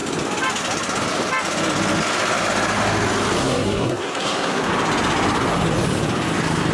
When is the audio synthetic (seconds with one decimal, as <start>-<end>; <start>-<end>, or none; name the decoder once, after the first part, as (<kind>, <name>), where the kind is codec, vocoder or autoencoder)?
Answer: 3.4-4.7 (codec, SNAC)